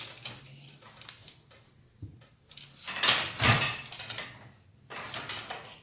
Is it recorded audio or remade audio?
recorded